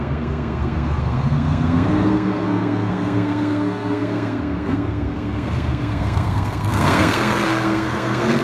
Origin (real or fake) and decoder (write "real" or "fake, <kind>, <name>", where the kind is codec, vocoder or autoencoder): fake, codec, SNAC